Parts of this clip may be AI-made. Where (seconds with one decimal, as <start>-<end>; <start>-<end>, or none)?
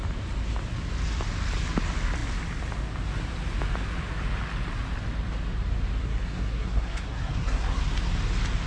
6.0-7.8